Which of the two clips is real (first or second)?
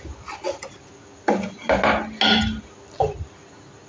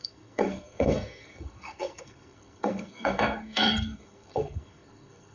first